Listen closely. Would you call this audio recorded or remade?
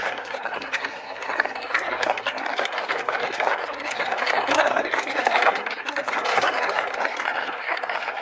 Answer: remade